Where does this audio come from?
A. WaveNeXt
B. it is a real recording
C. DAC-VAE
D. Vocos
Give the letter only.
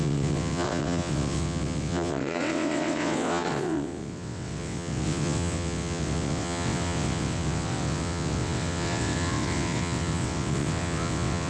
A